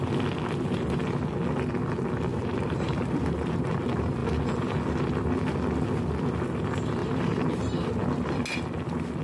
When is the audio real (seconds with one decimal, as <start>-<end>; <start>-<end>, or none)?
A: 0.0-2.3; 3.7-7.0; 7.9-9.2